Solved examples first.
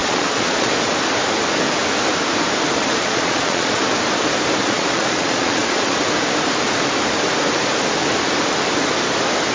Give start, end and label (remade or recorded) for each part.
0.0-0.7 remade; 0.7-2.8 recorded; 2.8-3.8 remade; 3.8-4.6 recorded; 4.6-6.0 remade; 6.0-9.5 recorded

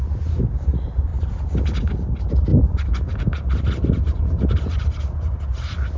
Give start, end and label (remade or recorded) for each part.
0.0-6.0 recorded

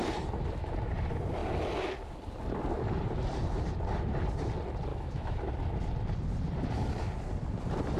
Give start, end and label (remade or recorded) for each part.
0.0-4.9 recorded; 4.9-5.4 remade; 5.4-8.0 recorded

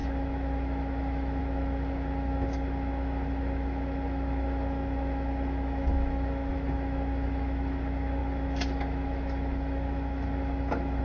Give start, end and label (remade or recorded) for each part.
0.0-11.0 remade

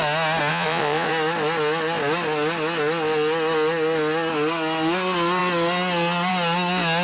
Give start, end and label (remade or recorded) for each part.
0.0-0.5 recorded; 0.5-1.1 remade; 1.1-7.0 recorded

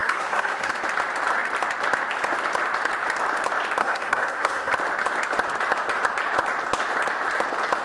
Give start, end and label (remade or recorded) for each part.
0.0-0.7 remade; 0.7-3.8 recorded; 3.8-4.7 remade; 4.7-7.8 recorded

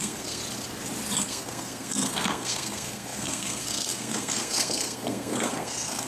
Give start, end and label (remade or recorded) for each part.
0.0-0.4 remade; 0.4-1.2 recorded; 1.2-6.1 remade